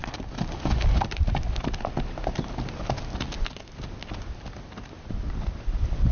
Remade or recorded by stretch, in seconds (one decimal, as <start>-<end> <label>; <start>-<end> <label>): 0.0-6.1 recorded